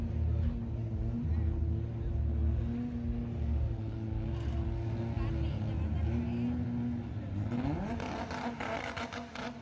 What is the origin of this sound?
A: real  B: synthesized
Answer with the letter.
A